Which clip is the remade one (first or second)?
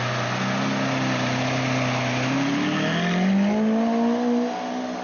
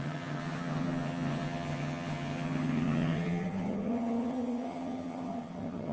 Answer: second